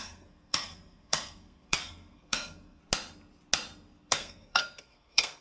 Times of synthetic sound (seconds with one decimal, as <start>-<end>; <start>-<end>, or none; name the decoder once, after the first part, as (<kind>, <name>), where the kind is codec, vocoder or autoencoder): 0.0-2.8 (codec, SNAC); 4.1-5.4